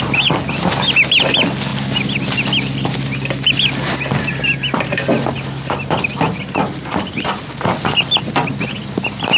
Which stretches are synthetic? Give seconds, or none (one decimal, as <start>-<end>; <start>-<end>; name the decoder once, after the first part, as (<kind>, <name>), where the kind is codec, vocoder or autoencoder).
none